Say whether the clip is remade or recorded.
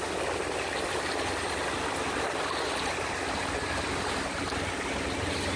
recorded